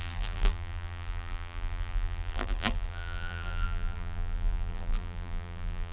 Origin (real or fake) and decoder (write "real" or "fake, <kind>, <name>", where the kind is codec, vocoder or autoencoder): fake, vocoder, BigVGAN v2